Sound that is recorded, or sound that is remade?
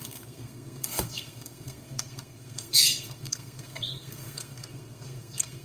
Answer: remade